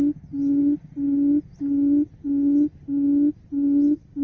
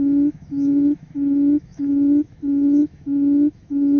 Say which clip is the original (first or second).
first